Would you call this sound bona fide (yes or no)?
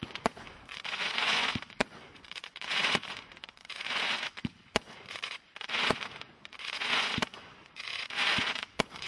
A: no